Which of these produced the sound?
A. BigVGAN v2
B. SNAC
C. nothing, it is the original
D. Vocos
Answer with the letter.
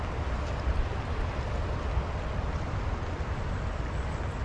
C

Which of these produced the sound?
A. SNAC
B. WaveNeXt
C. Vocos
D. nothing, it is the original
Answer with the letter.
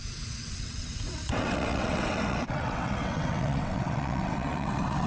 B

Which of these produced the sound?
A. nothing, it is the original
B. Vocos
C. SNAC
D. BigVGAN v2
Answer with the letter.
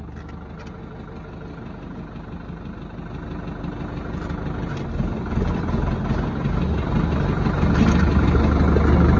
A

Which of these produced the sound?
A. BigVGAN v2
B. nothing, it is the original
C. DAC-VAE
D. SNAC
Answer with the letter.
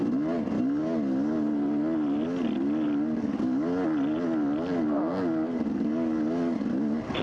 B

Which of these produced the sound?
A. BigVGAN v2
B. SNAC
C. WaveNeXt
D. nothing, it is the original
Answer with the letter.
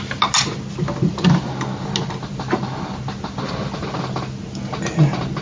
D